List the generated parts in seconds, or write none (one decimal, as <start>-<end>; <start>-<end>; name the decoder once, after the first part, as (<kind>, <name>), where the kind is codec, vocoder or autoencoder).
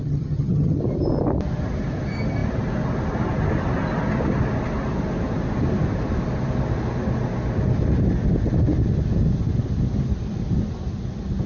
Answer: 0.0-0.8 (vocoder, HiFi-GAN)